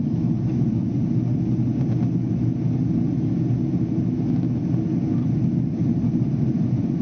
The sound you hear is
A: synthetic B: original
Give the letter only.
B